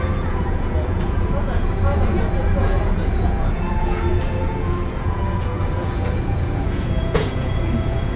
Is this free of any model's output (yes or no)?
no